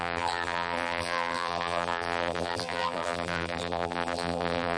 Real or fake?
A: fake